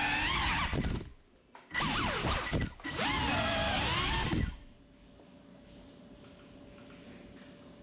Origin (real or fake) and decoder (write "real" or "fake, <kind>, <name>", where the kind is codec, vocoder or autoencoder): real